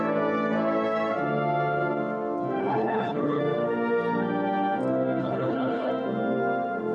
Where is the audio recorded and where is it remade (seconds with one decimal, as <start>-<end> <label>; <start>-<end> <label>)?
0.0-2.6 recorded; 2.6-3.4 remade; 3.4-5.2 recorded; 5.2-5.9 remade; 5.9-6.9 recorded